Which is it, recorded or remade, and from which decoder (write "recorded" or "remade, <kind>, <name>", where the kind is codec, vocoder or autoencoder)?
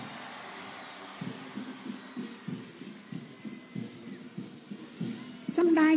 recorded